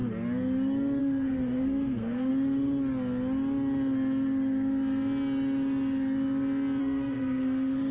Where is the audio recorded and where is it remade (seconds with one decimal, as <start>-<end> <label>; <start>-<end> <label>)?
0.0-1.0 recorded; 1.0-2.3 remade; 2.3-6.8 recorded; 6.8-7.9 remade